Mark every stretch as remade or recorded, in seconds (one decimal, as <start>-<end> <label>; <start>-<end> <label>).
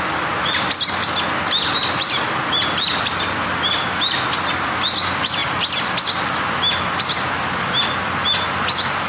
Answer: 0.0-9.1 recorded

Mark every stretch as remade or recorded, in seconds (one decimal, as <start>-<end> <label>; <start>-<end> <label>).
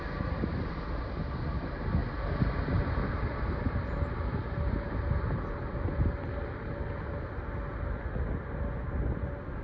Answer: 0.0-9.6 recorded